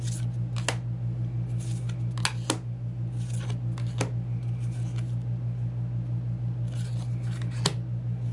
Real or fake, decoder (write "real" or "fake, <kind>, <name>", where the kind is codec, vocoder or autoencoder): real